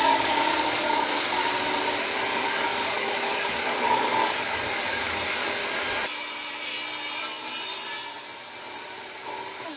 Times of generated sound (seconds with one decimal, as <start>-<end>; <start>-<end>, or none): 0.0-1.4; 2.3-5.6